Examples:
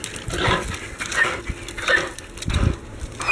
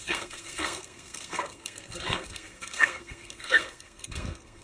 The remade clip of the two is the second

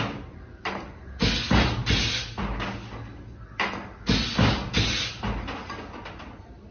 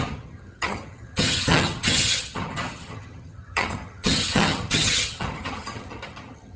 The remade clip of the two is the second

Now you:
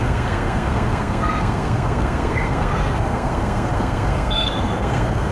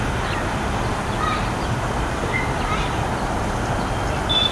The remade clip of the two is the first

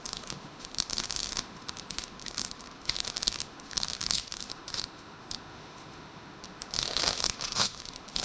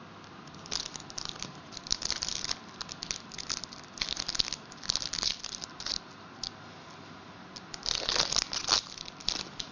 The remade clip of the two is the first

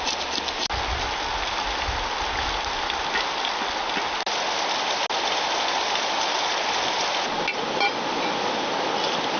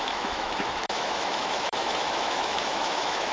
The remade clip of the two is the second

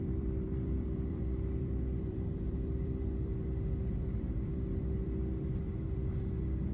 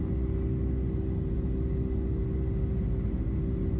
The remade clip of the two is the first